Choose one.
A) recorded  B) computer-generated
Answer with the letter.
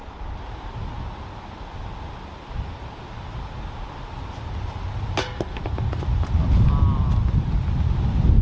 A